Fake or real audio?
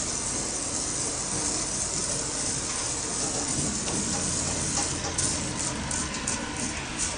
real